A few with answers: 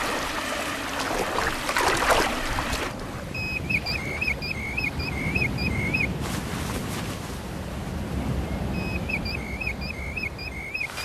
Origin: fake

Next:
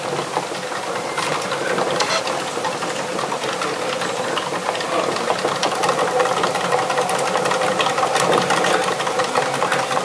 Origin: real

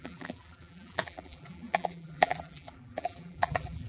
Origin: fake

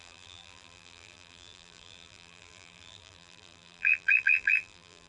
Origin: fake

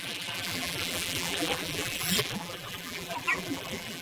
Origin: fake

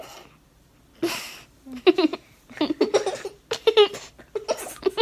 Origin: real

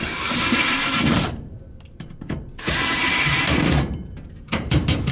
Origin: fake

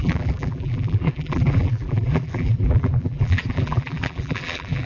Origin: fake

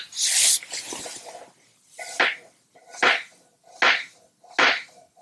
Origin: real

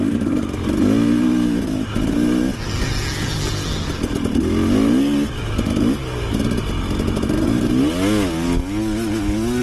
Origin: real